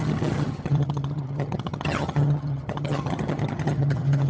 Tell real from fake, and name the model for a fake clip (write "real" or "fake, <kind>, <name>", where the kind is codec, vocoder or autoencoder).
fake, vocoder, HiFi-GAN